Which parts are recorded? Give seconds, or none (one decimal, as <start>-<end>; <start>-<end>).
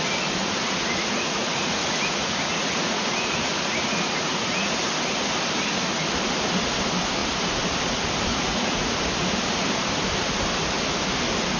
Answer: 0.0-0.4; 4.9-8.3; 9.0-11.6